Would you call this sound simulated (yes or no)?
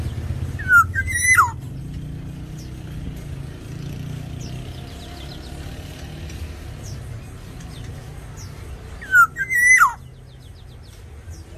no